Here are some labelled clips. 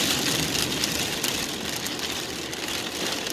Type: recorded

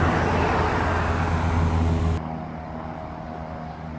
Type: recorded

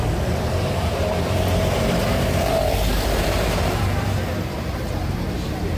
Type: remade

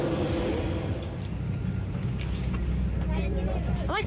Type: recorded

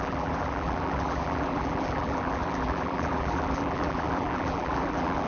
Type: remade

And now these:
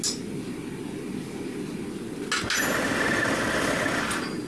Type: recorded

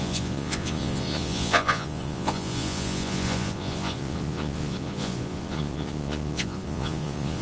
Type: remade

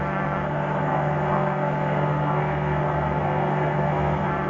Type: remade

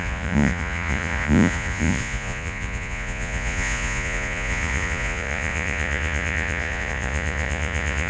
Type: remade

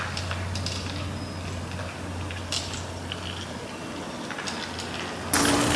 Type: recorded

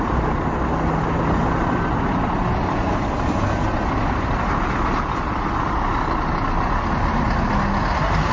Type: recorded